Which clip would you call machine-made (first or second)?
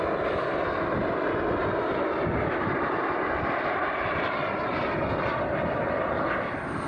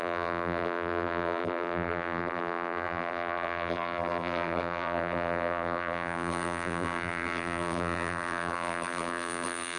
second